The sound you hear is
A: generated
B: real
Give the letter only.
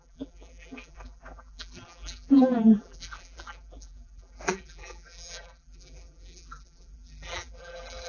A